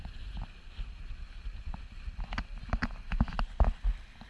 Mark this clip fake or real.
real